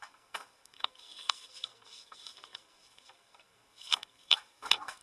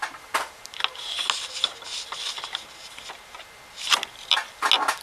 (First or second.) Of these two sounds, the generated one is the first